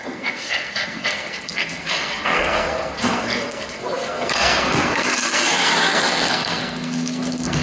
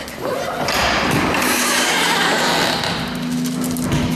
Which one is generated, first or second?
first